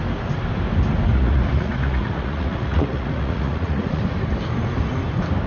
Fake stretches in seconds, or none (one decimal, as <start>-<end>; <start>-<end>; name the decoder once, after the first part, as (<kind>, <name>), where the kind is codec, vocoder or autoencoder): 1.1-4.0 (vocoder, Vocos)